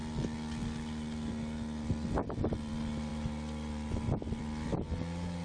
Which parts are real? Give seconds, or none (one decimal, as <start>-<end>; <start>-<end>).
0.0-5.4